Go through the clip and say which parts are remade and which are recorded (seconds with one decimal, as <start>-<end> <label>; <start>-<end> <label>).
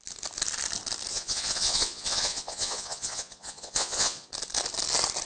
0.0-1.1 recorded; 1.1-4.3 remade; 4.3-5.3 recorded